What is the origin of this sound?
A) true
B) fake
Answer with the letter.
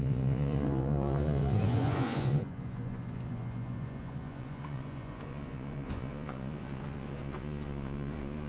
B